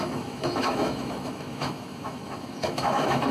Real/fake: fake